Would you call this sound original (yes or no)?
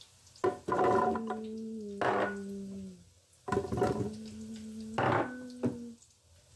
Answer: yes